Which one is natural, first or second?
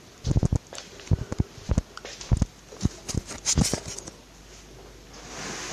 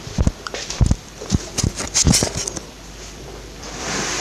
first